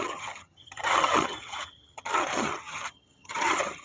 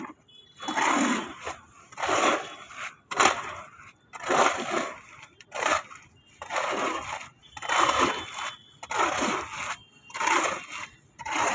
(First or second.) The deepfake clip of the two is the first